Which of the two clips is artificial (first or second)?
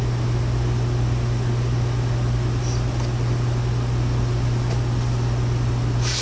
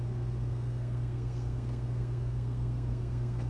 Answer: second